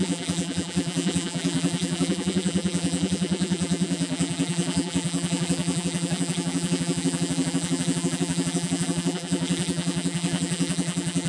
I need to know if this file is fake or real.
fake